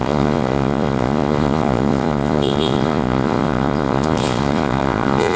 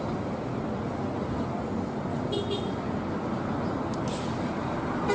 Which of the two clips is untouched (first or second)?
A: second